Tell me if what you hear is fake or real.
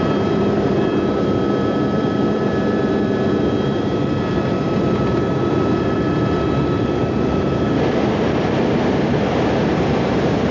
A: fake